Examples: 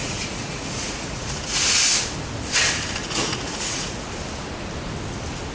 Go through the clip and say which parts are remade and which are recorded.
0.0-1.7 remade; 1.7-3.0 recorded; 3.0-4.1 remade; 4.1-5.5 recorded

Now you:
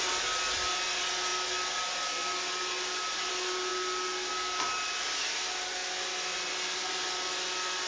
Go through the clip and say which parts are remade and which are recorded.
0.0-7.9 recorded

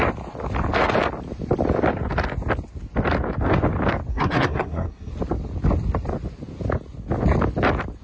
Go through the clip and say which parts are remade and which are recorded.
0.0-4.1 recorded; 4.1-5.1 remade; 5.1-8.0 recorded